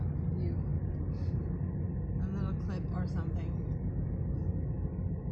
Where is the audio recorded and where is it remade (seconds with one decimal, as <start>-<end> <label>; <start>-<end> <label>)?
0.0-5.3 recorded